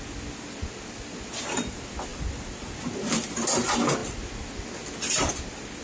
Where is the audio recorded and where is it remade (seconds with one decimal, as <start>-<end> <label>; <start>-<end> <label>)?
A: 0.0-5.8 recorded